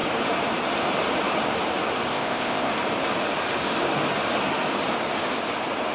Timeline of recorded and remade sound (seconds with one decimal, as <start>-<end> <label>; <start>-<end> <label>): 0.0-2.1 recorded; 2.1-2.7 remade; 2.7-5.9 recorded